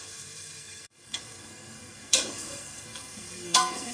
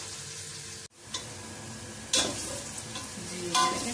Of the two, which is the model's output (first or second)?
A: first